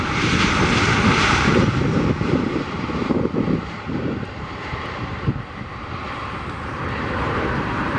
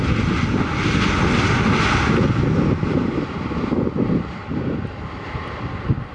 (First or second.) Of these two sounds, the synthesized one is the first